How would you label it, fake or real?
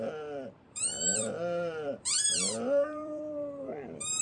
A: fake